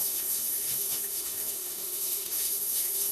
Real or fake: fake